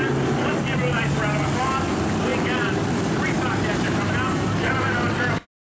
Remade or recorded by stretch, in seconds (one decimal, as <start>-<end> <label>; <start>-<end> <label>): 0.0-5.6 recorded